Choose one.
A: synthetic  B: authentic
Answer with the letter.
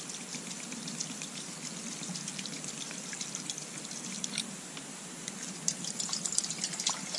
B